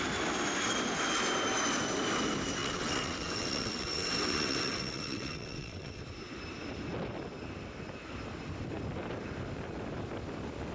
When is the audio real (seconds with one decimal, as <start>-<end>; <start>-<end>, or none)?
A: 0.0-2.6; 6.0-10.7